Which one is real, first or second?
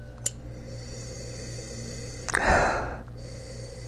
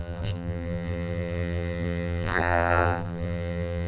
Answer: first